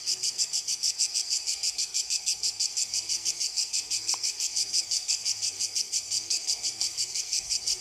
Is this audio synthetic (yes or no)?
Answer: yes